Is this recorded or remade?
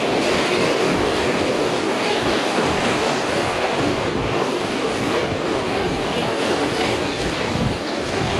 remade